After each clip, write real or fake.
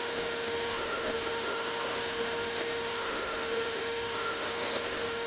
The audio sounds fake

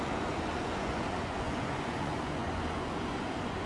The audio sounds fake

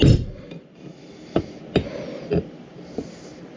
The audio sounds real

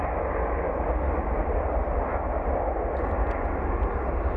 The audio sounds real